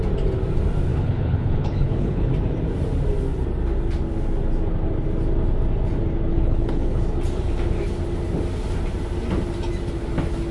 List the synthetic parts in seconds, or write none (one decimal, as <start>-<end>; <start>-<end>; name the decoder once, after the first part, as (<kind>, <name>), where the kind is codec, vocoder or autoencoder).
0.9-2.3 (codec, HILCodec); 6.3-7.0